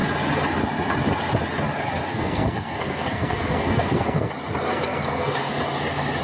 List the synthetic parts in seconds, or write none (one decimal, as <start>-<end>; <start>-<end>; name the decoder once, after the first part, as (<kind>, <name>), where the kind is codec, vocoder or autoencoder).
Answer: 2.1-4.3 (codec, SNAC); 4.7-5.5

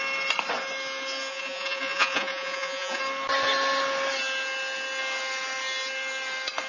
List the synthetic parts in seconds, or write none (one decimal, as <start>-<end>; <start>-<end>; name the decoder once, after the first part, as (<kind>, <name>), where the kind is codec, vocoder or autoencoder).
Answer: 1.3-3.0 (vocoder, Vocos)

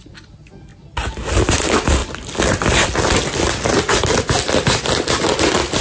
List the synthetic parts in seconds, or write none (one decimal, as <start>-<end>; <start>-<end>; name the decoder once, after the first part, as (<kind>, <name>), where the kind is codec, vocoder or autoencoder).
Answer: none

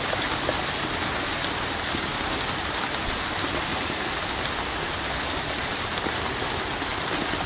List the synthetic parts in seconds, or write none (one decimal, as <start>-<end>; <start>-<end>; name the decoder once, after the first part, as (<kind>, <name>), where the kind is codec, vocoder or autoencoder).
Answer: 3.7-4.2 (vocoder, Vocos)

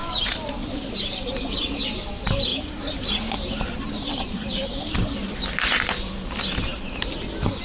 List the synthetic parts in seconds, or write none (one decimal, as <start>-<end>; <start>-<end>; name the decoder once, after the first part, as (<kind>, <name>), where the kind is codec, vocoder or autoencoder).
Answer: 0.0-1.3 (vocoder, BigVGAN v2); 2.5-4.9; 6.7-7.6

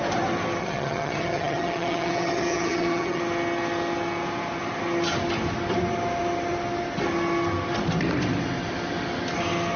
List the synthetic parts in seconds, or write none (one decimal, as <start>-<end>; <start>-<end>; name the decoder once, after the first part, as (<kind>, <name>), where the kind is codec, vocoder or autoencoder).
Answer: 0.6-3.2 (vocoder, HiFi-GAN)

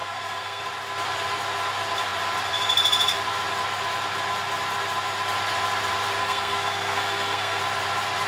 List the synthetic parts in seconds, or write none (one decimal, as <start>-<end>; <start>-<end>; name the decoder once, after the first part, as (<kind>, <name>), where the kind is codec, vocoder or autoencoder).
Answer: 0.0-0.6 (codec, SNAC); 6.2-7.6

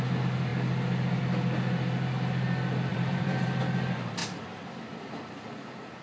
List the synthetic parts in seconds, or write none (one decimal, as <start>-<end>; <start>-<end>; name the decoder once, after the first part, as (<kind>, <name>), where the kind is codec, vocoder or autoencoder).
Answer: 2.9-3.6 (vocoder, BigVGAN v2); 4.2-5.4